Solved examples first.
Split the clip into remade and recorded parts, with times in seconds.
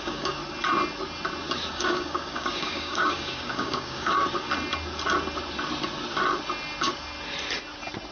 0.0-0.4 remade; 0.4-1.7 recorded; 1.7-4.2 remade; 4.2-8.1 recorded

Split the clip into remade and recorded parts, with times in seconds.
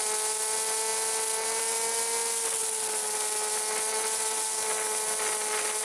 0.0-5.8 recorded